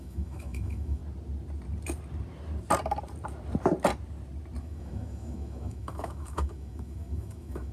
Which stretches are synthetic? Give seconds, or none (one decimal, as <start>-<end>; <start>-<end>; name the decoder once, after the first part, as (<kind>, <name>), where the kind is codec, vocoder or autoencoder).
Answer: 0.0-1.0 (autoencoder, DAC-VAE); 4.6-7.7

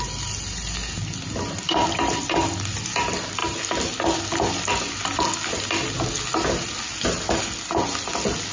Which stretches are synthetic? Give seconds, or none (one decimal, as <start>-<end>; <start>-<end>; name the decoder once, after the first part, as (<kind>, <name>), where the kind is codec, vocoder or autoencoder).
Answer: none